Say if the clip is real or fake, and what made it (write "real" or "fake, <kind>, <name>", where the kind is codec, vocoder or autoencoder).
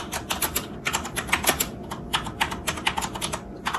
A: real